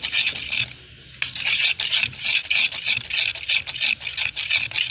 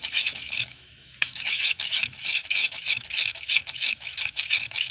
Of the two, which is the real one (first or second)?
first